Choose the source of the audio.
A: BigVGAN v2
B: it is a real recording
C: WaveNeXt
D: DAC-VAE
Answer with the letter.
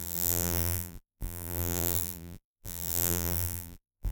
A